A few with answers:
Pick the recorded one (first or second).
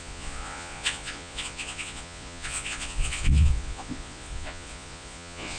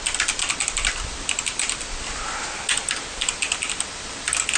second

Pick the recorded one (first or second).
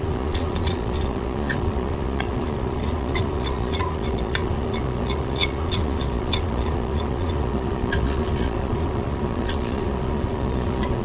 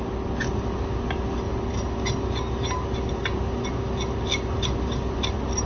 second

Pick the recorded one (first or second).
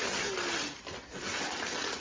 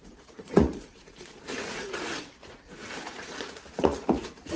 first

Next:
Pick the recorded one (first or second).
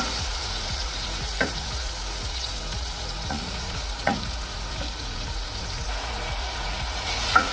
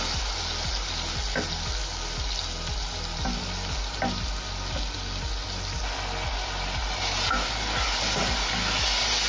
second